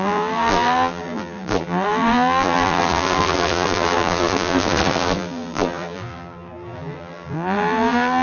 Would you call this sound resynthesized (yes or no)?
yes